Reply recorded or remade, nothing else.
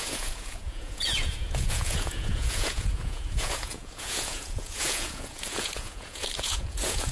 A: remade